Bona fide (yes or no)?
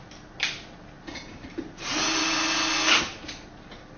yes